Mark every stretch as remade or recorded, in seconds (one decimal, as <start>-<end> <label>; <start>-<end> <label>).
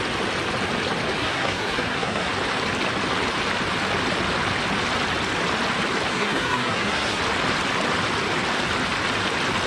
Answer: 0.0-1.2 recorded; 1.2-2.3 remade; 2.3-6.1 recorded; 6.1-7.2 remade; 7.2-9.7 recorded